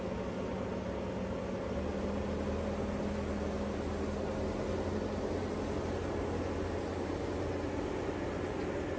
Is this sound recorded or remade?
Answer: recorded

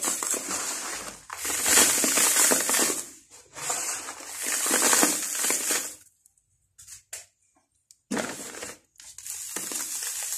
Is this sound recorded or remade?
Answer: recorded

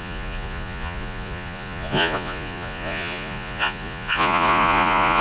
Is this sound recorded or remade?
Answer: remade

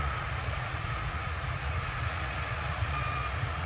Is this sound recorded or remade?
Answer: remade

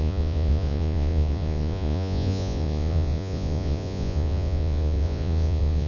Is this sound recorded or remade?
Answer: remade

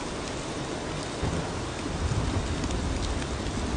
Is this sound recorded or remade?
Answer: recorded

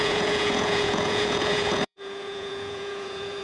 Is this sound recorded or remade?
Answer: remade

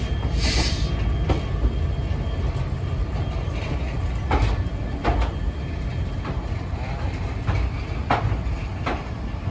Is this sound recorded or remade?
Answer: recorded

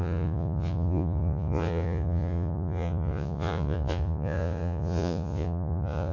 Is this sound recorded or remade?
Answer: remade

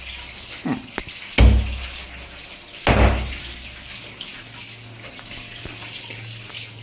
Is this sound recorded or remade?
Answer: recorded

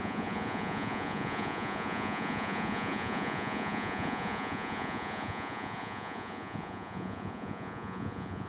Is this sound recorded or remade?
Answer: remade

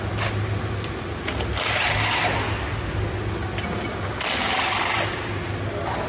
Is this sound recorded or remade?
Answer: recorded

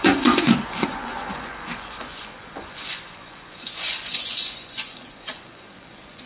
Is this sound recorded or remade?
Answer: remade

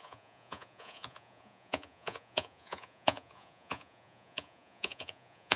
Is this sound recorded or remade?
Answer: remade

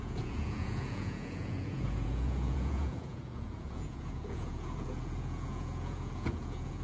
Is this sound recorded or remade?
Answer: remade